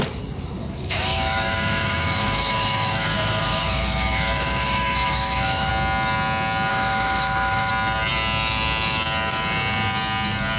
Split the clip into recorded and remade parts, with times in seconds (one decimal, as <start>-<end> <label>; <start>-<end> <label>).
0.0-0.6 recorded; 0.6-5.7 remade; 5.7-6.7 recorded; 6.7-7.7 remade; 7.7-10.6 recorded